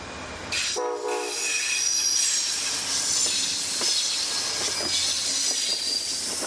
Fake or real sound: real